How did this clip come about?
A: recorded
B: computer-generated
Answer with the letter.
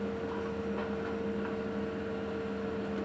A